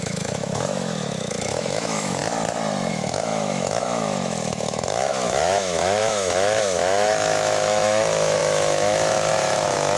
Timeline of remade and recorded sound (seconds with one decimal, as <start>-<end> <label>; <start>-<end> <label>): 0.0-2.2 remade; 2.2-2.9 recorded; 2.9-10.0 remade